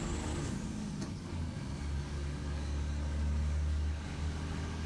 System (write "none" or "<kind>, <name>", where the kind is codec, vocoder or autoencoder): codec, DAC